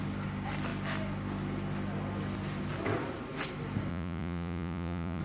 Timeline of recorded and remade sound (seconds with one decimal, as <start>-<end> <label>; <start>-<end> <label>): 0.0-3.9 recorded; 3.9-5.2 remade